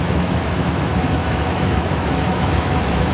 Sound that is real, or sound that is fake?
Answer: fake